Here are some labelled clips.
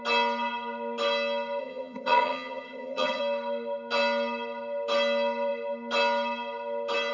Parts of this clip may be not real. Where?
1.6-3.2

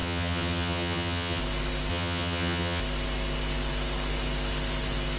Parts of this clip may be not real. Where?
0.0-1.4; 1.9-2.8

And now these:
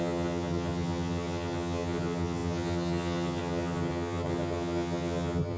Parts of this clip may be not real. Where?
0.0-5.6